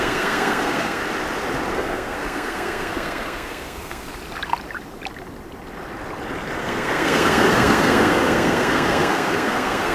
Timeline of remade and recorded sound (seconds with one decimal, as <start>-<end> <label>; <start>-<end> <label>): 0.0-1.0 remade; 1.0-1.7 recorded; 1.7-4.1 remade; 4.1-6.6 recorded; 6.6-9.9 remade